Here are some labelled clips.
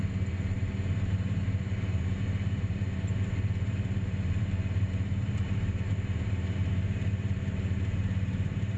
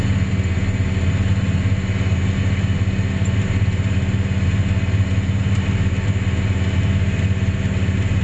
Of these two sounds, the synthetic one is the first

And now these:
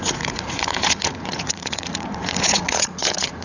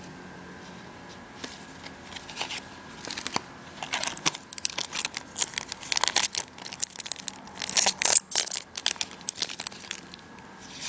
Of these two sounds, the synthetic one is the first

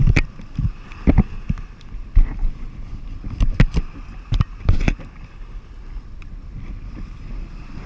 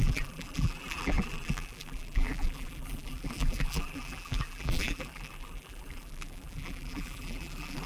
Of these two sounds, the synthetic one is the second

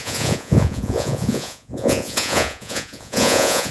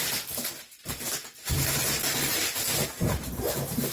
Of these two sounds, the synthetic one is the first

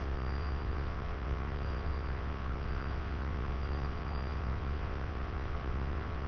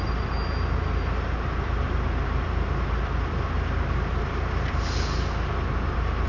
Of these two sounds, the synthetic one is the first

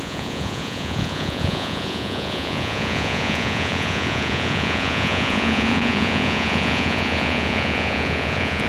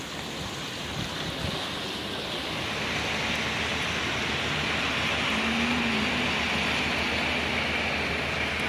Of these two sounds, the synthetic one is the first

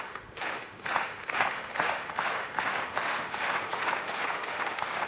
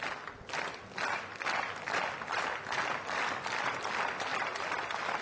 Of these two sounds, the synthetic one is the first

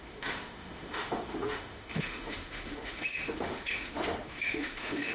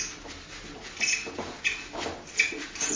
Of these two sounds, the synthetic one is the first